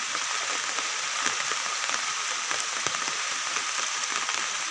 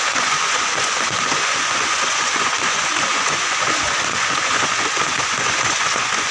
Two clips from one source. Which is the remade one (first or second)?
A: second